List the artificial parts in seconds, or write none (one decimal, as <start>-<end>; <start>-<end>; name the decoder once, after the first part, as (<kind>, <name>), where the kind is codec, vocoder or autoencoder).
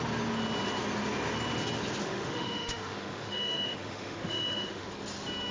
2.0-4.9 (autoencoder, DAC-VAE)